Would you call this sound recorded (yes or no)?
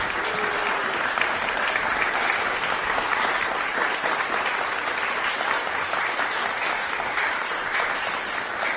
yes